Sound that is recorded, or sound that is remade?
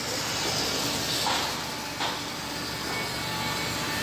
recorded